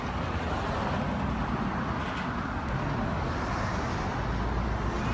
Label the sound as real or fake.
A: real